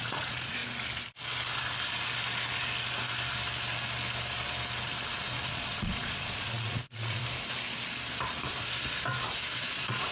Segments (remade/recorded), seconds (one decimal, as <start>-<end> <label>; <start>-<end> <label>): 0.0-0.6 remade; 0.6-5.4 recorded; 5.4-7.2 remade; 7.2-9.6 recorded; 9.6-10.1 remade